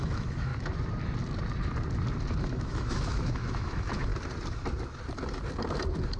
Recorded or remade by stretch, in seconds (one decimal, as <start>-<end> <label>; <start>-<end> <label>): 0.0-0.5 remade; 0.5-2.6 recorded; 2.6-4.1 remade; 4.1-6.2 recorded

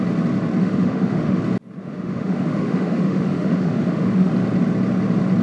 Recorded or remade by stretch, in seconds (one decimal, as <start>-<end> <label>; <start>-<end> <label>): 0.0-0.6 recorded; 0.6-1.4 remade; 1.4-1.8 recorded; 1.8-4.3 remade; 4.3-5.4 recorded

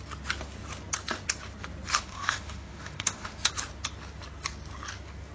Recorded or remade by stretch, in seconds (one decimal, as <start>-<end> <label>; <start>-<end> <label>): 0.0-1.9 recorded; 1.9-3.5 remade; 3.5-5.3 recorded

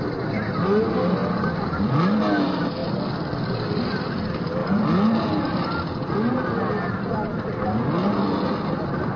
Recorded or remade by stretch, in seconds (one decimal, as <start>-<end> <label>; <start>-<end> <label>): 0.0-9.2 recorded

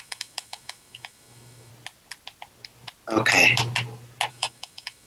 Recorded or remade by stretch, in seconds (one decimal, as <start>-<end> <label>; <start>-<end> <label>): 0.0-1.7 remade; 1.7-4.3 recorded; 4.3-5.1 remade